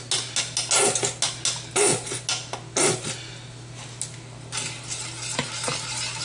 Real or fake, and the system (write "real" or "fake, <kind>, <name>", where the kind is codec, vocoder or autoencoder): real